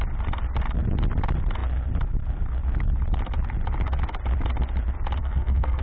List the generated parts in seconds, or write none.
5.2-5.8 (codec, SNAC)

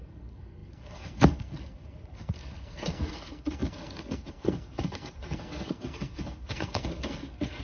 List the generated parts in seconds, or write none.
0.0-7.6 (codec, SNAC)

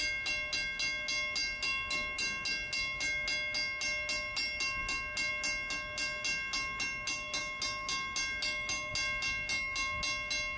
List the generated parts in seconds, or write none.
none

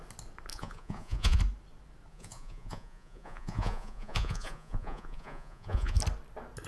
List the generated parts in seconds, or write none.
0.5-1.4 (vocoder, Vocos); 2.1-6.0

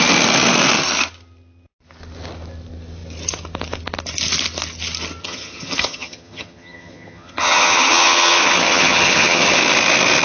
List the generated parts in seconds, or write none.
5.2-9.6 (vocoder, HiFi-GAN)